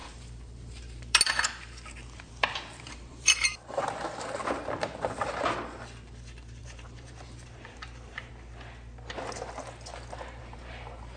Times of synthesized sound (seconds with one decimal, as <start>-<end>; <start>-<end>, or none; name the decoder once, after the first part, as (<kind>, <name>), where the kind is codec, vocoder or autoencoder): 0.0-1.2 (vocoder, BigVGAN v2); 2.0-3.8; 6.6-8.3; 10.4-11.2

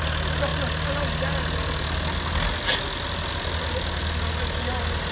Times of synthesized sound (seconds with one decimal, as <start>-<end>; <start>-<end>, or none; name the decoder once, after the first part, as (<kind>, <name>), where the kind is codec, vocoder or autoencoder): none

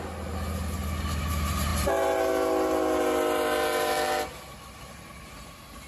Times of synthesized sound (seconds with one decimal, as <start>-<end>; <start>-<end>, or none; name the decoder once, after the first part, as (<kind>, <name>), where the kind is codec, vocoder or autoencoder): none

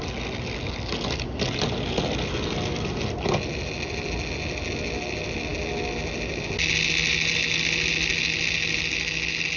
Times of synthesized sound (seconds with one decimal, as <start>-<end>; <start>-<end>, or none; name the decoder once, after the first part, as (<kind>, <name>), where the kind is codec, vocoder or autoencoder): none

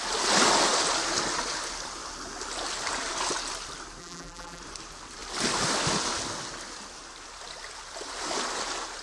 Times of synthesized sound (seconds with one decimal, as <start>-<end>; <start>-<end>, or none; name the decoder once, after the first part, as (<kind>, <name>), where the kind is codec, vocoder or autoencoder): 4.0-4.6 (vocoder, BigVGAN v2)